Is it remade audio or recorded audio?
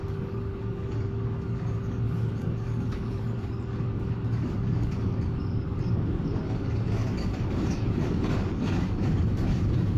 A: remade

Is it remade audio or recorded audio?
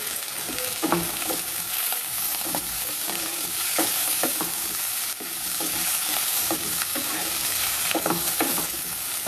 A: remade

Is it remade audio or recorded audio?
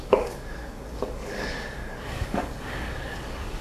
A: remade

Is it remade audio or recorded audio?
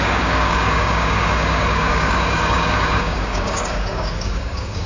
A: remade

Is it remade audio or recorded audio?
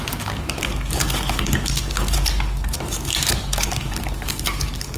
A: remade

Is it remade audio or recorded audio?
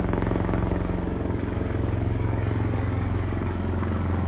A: remade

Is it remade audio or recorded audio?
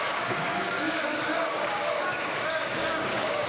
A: remade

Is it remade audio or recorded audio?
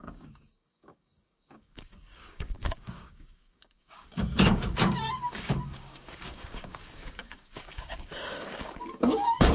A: remade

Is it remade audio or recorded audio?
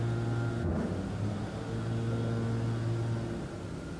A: recorded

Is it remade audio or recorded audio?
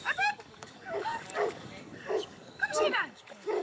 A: remade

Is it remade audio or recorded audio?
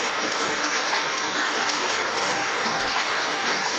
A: remade